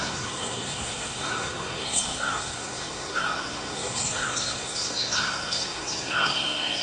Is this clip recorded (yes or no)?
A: no